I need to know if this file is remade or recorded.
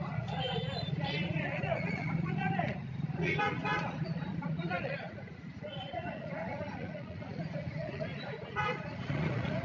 remade